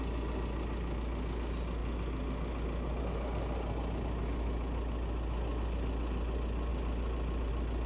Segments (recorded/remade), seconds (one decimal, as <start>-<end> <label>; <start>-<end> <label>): 0.0-7.9 recorded